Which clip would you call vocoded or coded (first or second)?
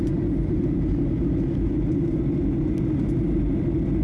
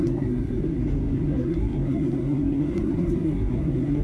second